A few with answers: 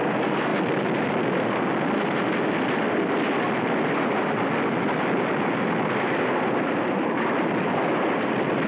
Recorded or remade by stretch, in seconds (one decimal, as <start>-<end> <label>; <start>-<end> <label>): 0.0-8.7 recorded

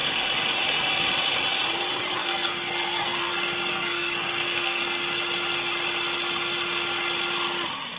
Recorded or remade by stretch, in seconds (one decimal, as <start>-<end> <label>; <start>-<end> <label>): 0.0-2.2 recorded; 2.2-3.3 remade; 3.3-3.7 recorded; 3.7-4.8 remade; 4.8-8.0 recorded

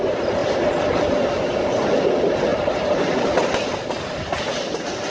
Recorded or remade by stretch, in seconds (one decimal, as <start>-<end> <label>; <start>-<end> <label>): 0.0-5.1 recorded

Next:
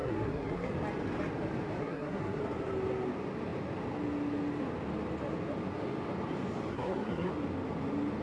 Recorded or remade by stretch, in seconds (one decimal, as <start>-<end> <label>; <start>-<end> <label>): 0.0-0.7 remade; 0.7-1.8 recorded; 1.8-2.4 remade; 2.4-6.7 recorded; 6.7-7.3 remade; 7.3-8.2 recorded

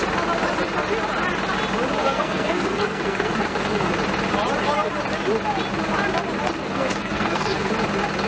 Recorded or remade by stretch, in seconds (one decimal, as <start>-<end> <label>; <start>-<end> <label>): 0.0-2.0 recorded; 2.0-3.9 remade; 3.9-6.6 recorded; 6.6-7.7 remade; 7.7-8.3 recorded